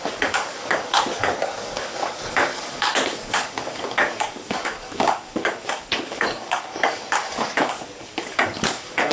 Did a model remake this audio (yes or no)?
yes